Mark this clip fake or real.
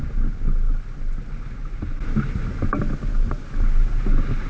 real